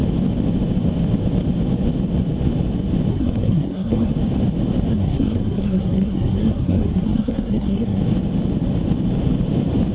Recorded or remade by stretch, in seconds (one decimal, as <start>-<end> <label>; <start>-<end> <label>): 0.0-3.1 recorded; 3.1-4.1 remade; 4.1-4.9 recorded; 4.9-8.0 remade; 8.0-9.9 recorded